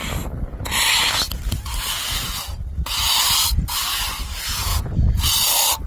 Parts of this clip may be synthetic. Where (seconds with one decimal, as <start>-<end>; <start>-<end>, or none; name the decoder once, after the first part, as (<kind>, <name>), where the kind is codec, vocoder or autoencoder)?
4.7-5.2 (vocoder, Vocos)